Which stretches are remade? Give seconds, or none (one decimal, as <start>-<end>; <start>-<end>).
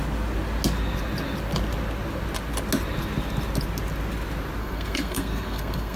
4.6-6.0